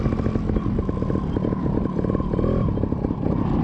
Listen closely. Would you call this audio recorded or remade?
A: recorded